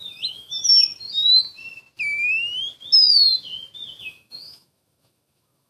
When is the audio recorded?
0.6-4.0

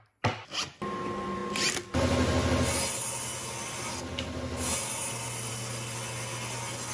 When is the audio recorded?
0.0-6.9

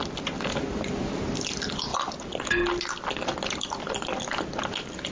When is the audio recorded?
0.0-5.1

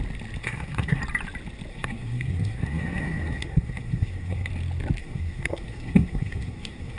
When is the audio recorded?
0.0-0.4; 1.0-1.7; 4.5-5.0